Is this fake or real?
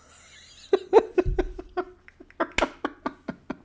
real